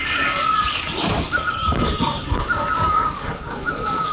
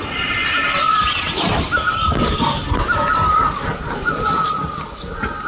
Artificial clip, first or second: first